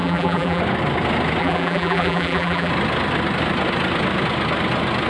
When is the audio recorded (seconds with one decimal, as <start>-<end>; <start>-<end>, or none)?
0.6-1.4; 2.7-5.1